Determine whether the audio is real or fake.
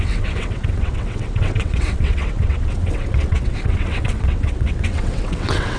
fake